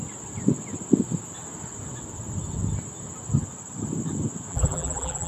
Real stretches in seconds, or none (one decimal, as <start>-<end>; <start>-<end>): 0.0-4.5